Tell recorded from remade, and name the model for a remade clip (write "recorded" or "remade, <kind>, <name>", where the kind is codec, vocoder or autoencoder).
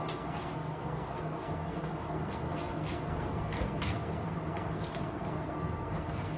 remade, codec, SNAC